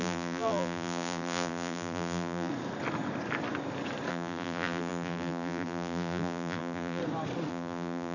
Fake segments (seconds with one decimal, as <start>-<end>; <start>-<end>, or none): 0.0-2.5; 4.1-7.0; 7.5-8.1